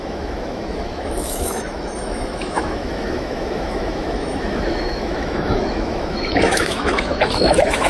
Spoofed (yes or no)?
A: yes